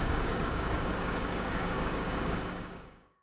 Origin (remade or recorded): remade